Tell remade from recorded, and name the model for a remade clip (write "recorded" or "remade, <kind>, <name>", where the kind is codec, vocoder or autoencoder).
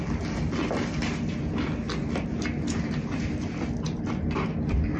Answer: recorded